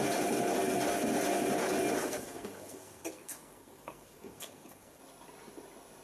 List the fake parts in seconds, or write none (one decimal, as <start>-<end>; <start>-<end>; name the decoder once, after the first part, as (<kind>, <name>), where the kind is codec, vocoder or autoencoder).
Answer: 2.0-5.0 (codec, SNAC)